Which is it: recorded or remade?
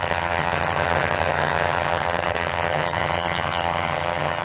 remade